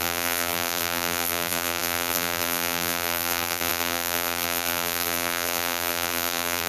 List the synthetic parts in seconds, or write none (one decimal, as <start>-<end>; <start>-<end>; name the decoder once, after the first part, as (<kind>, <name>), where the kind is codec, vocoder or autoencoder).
0.0-6.7 (vocoder, BigVGAN v2)